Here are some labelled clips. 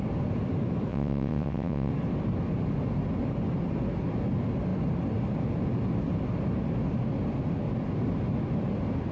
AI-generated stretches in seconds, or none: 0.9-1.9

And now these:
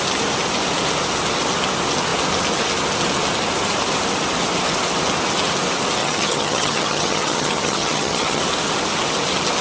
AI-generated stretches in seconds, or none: 6.0-8.4

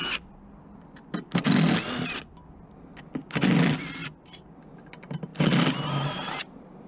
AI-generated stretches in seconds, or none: none